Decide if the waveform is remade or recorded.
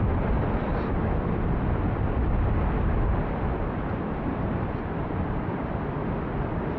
recorded